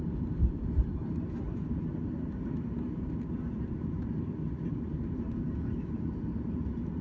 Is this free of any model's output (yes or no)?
no